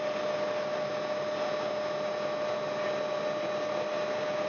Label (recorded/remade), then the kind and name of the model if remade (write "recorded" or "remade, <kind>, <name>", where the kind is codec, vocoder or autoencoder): recorded